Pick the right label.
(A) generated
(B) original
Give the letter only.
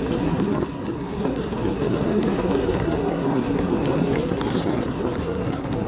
A